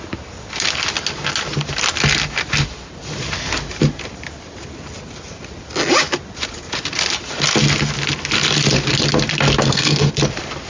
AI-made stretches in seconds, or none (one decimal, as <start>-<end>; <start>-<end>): 9.6-10.1